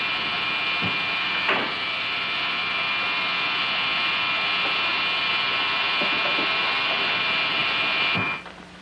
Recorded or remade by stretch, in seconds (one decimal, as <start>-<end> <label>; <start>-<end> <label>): 0.0-8.8 recorded